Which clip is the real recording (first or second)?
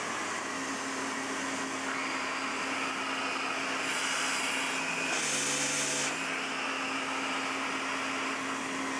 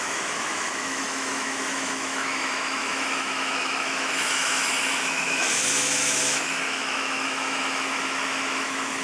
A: first